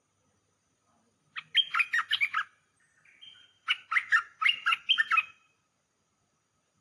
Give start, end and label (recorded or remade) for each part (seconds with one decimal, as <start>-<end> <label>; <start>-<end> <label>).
0.0-6.8 recorded